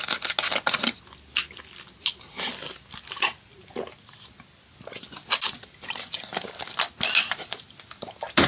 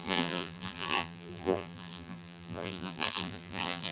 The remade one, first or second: second